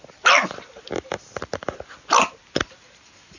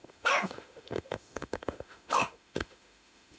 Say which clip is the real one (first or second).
first